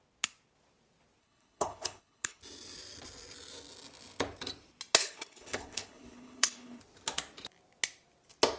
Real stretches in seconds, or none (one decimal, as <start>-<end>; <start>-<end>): 0.0-1.2; 2.4-5.0; 6.8-8.6